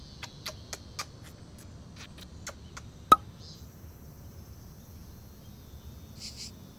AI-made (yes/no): no